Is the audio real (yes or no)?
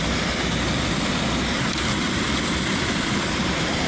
yes